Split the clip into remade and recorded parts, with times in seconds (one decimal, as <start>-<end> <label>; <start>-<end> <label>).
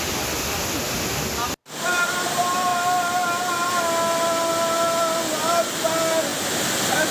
0.0-7.1 recorded